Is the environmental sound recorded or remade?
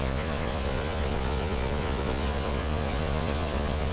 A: remade